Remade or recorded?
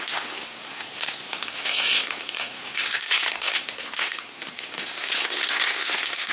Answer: remade